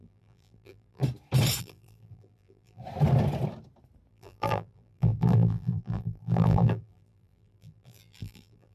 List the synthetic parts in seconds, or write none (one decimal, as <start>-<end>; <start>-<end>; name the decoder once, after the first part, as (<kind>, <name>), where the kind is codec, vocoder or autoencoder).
0.0-1.0 (vocoder, BigVGAN v2); 1.6-2.8; 4.1-8.7